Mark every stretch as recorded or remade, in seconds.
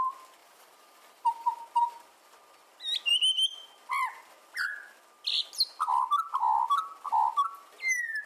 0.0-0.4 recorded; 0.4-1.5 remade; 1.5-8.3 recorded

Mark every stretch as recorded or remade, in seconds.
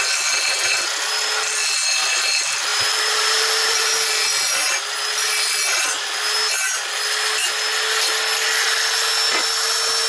0.0-2.7 recorded; 2.7-4.1 remade; 4.1-10.1 recorded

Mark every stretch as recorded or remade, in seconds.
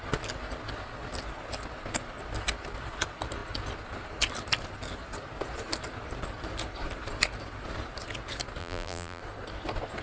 0.0-8.6 recorded; 8.6-9.2 remade; 9.2-10.0 recorded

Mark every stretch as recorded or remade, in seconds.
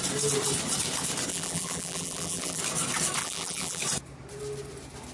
0.0-1.3 recorded; 1.3-2.6 remade; 2.6-3.2 recorded; 3.2-3.8 remade; 3.8-5.1 recorded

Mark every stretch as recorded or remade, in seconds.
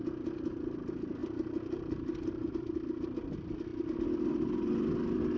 0.0-1.2 recorded; 1.2-2.6 remade; 2.6-5.4 recorded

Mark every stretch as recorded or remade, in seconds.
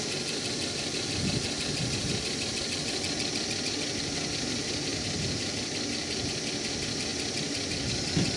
0.0-2.0 recorded; 2.0-2.6 remade; 2.6-4.9 recorded; 4.9-5.5 remade; 5.5-8.4 recorded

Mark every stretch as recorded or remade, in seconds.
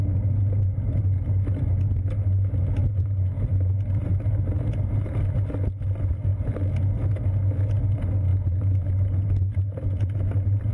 0.0-2.8 recorded; 2.8-5.2 remade; 5.2-8.3 recorded; 8.3-10.7 remade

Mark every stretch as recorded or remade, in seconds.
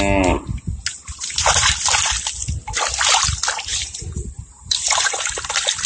0.0-0.9 recorded; 0.9-2.0 remade; 2.0-3.7 recorded; 3.7-5.5 remade; 5.5-5.9 recorded